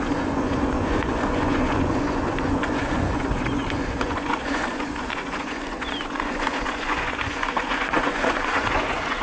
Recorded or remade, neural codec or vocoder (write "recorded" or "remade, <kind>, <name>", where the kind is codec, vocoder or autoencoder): remade, vocoder, Vocos